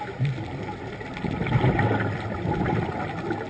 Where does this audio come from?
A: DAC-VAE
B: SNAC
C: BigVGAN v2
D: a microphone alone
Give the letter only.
D